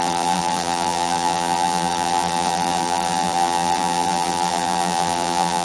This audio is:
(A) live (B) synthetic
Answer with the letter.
B